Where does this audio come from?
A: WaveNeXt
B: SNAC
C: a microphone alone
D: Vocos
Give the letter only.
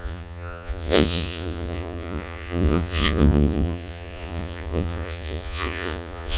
D